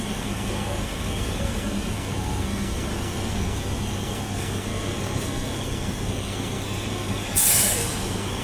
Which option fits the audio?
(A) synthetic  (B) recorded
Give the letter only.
A